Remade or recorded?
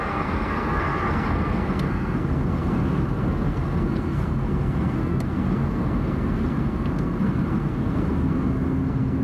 remade